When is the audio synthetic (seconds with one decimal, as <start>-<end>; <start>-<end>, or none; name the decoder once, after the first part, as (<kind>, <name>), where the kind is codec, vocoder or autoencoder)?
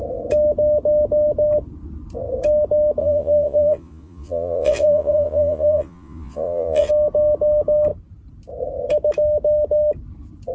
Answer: 3.0-6.9 (vocoder, Vocos)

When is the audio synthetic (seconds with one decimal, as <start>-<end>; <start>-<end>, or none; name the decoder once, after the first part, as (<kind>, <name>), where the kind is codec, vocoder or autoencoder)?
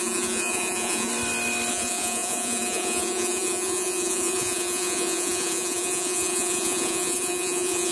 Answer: 0.0-1.1 (vocoder, Vocos); 1.7-7.9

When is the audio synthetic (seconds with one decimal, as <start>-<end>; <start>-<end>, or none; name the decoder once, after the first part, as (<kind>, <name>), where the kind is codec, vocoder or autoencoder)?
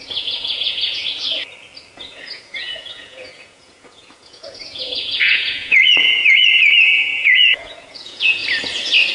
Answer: 0.0-1.0 (vocoder, Vocos); 2.0-8.4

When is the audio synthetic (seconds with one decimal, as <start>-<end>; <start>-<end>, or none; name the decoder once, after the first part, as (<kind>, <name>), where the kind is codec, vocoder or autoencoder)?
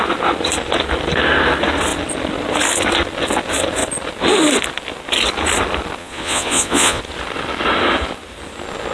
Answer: 6.0-7.0 (vocoder, Vocos)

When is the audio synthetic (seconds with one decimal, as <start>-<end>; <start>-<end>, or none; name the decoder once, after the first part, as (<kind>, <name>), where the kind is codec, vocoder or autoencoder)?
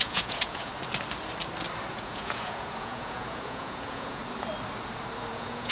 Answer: 0.0-0.7 (vocoder, Vocos); 1.9-4.2; 5.3-5.7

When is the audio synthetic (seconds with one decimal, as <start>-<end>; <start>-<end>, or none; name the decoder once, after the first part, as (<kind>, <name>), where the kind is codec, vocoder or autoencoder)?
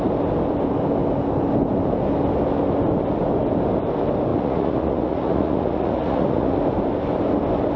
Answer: 4.3-6.6 (vocoder, Vocos)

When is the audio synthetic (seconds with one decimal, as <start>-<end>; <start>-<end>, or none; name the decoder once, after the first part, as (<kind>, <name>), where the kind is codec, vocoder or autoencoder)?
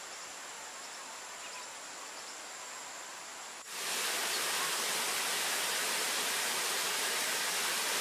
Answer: none